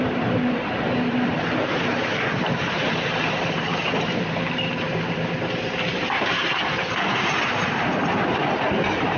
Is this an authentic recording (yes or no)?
no